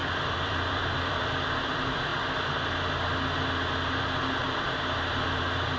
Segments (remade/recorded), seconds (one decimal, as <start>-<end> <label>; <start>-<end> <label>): 0.0-2.1 remade; 2.1-5.0 recorded; 5.0-5.8 remade